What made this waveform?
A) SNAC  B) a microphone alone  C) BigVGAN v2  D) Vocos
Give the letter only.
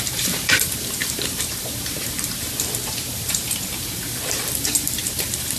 C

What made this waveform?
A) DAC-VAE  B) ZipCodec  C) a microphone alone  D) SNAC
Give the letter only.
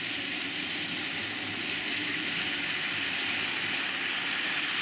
C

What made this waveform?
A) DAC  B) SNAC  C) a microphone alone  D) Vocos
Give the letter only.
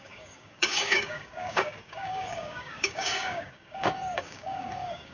A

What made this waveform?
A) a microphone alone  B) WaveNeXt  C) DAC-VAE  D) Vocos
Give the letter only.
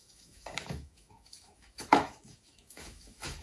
C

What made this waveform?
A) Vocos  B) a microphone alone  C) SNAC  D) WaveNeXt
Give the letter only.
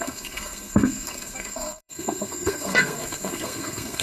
C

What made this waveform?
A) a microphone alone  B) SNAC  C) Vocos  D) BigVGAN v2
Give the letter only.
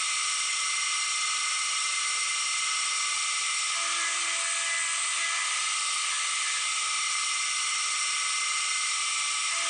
A